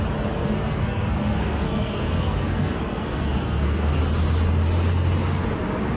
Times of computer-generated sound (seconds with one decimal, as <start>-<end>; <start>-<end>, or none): 0.4-4.0